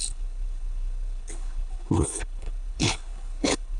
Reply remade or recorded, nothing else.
remade